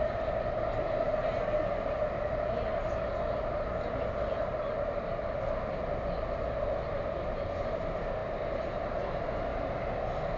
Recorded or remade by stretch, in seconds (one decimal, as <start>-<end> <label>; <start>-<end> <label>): 0.0-10.4 recorded